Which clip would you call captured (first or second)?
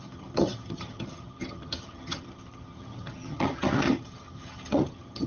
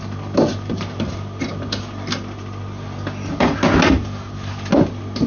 second